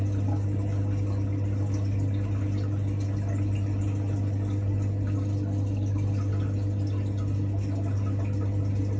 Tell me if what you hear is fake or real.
real